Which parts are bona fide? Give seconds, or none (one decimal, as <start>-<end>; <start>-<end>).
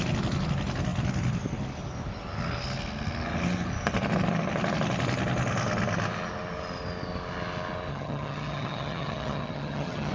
0.0-7.9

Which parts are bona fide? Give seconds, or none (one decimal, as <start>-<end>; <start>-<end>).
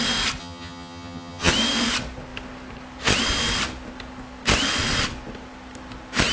0.0-0.4; 1.5-6.3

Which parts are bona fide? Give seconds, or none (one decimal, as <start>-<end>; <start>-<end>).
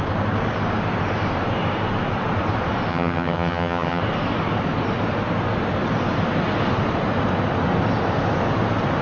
0.0-2.9; 4.0-9.0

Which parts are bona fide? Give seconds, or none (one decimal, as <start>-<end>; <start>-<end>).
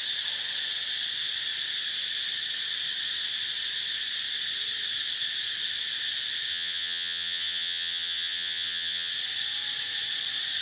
0.0-6.5; 9.1-10.6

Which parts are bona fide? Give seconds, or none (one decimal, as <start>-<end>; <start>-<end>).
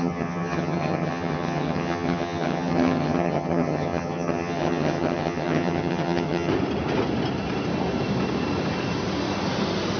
6.5-10.0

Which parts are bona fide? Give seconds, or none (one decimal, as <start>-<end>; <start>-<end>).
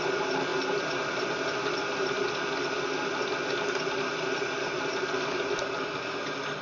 0.0-6.6